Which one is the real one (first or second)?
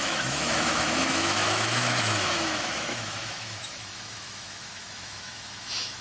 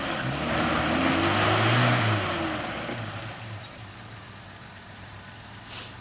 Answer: second